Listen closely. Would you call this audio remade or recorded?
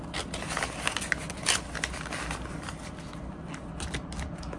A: recorded